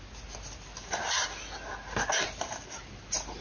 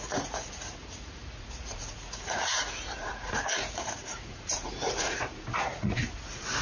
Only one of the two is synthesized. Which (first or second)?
second